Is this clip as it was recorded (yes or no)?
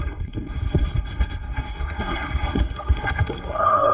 no